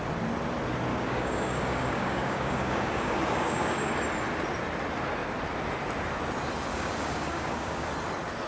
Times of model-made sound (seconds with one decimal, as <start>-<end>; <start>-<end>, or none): 0.9-3.9; 6.7-7.9